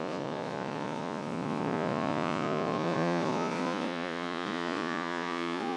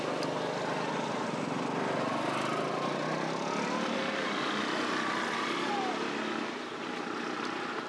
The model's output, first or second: first